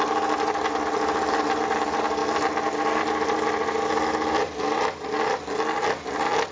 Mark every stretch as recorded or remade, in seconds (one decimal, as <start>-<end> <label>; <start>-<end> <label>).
0.0-6.5 recorded